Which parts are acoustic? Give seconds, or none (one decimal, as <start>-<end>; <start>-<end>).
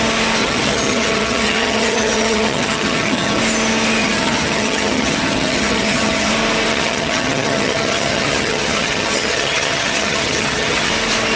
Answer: 0.0-0.4; 3.4-4.0; 6.3-6.7; 10.9-11.4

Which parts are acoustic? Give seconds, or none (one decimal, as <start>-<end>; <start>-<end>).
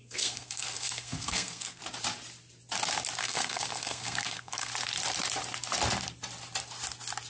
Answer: 1.8-3.2; 4.7-7.3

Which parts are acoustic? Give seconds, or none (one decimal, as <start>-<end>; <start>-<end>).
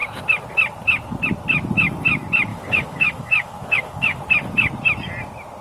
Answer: 0.0-2.5; 4.2-5.6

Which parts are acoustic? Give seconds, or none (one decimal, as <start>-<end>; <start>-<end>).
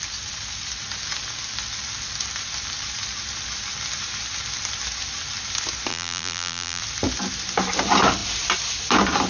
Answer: 0.0-5.9; 6.8-9.3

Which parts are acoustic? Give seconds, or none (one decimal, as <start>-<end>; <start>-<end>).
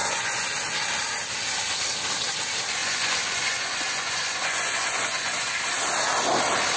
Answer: 0.5-2.8; 5.5-6.8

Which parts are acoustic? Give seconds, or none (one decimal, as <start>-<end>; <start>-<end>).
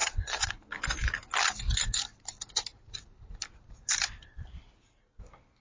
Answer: 0.5-5.6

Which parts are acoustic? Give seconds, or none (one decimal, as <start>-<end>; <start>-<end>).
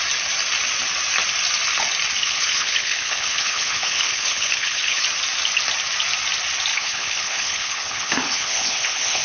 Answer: 0.0-2.2; 5.0-6.7